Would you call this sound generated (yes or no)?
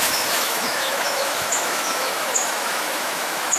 yes